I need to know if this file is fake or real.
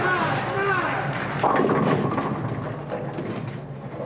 real